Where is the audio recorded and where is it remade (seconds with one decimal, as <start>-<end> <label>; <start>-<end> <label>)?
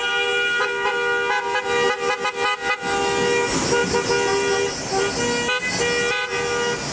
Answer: 0.0-6.9 recorded